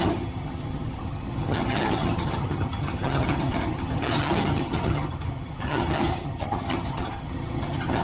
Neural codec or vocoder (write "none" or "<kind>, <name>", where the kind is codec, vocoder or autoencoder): vocoder, HiFi-GAN